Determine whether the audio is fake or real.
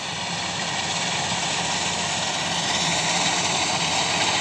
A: real